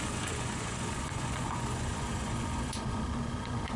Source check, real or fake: fake